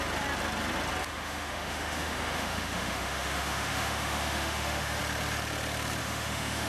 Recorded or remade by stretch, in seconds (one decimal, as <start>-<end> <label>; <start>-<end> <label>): 0.0-1.0 recorded; 1.0-5.0 remade; 5.0-6.0 recorded; 6.0-6.7 remade